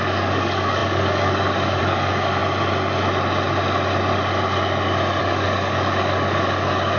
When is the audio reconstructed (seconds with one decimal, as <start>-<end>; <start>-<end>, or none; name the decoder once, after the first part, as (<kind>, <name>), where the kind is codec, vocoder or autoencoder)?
0.0-2.4 (codec, DAC); 5.2-7.0